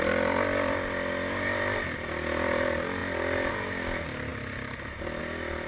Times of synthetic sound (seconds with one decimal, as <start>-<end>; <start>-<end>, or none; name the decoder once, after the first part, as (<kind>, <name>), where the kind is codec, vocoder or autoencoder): none